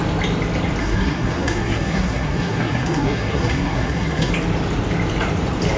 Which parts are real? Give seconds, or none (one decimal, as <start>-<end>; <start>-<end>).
0.0-0.8; 4.3-5.8